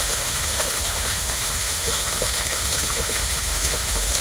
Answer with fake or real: fake